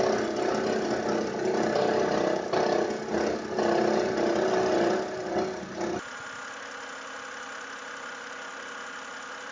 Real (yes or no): yes